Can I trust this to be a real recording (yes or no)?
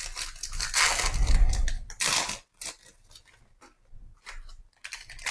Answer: yes